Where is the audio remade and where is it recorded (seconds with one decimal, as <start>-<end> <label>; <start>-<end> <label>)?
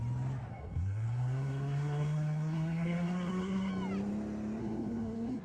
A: 0.0-0.5 recorded; 0.5-3.7 remade; 3.7-4.6 recorded; 4.6-5.4 remade